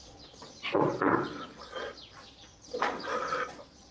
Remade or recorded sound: remade